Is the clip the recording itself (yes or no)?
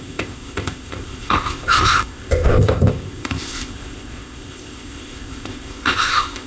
no